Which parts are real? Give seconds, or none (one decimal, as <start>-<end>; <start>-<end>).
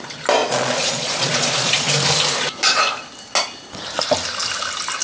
0.0-0.4; 1.9-5.0